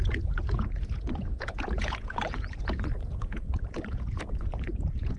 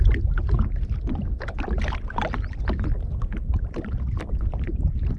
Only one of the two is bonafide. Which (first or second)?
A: second